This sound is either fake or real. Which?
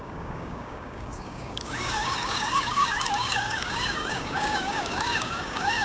fake